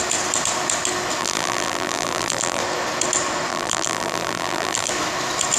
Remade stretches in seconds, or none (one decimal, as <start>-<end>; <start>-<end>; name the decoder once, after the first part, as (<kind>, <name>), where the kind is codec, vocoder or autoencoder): 1.2-2.6 (vocoder, BigVGAN v2); 3.5-4.9